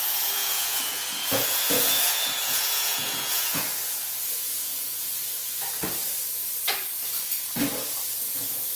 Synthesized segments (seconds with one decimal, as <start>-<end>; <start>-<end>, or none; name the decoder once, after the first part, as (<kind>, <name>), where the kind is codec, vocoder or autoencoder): 0.0-5.1 (vocoder, Vocos); 8.1-8.8